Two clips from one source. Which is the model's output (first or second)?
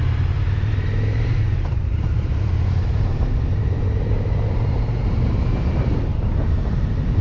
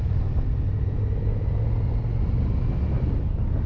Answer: first